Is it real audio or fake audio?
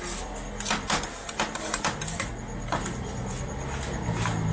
real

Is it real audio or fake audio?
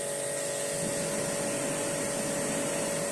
real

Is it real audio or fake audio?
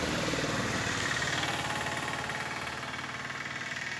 fake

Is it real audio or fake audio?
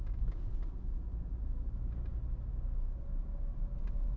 real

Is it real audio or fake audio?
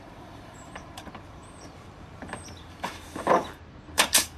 fake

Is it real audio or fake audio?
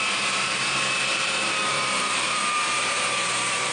fake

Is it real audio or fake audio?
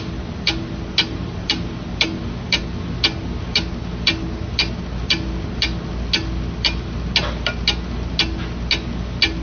real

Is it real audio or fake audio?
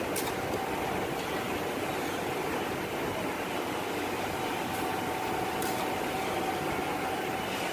real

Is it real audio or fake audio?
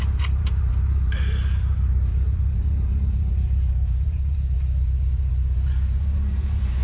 fake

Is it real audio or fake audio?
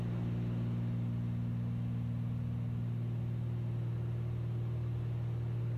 real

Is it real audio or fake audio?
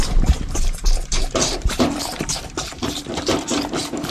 fake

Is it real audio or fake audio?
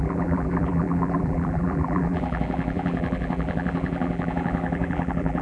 fake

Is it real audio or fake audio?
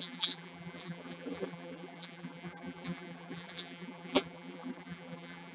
fake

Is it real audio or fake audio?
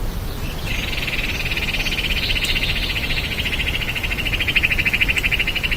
real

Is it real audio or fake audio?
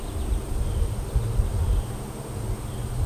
real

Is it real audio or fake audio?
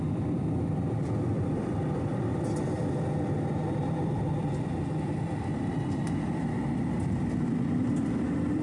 fake